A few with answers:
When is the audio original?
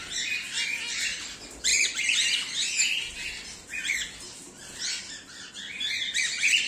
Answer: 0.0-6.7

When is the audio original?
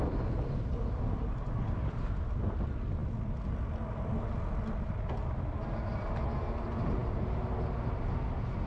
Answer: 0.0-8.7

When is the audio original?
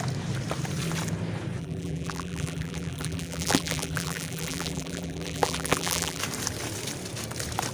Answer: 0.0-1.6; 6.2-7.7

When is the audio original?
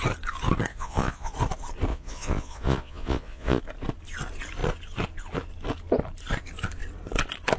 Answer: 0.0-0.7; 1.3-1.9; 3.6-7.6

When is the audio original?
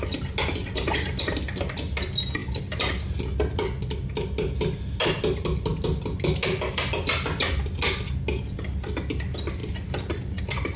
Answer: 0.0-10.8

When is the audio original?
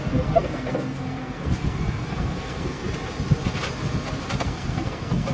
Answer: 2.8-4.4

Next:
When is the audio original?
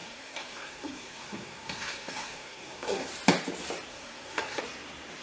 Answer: 3.1-3.9; 4.6-5.2